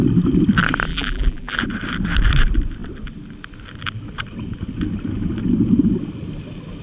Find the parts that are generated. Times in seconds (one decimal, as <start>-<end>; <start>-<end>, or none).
0.9-1.6